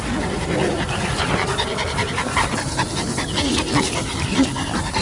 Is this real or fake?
real